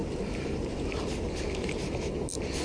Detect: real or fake real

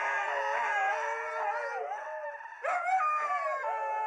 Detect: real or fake real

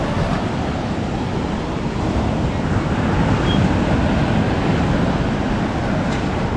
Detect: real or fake real